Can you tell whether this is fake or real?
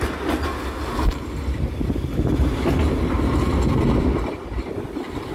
real